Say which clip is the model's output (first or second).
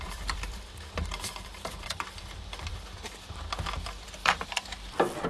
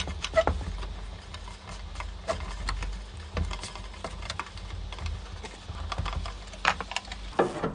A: first